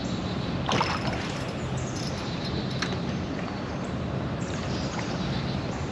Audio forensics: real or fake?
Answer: real